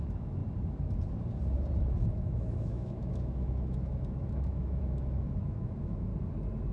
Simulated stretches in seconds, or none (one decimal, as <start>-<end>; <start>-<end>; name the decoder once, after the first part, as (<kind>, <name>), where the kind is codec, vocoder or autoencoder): 0.0-0.4 (autoencoder, DAC-VAE); 2.1-6.1